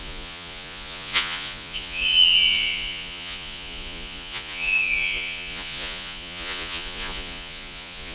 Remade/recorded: remade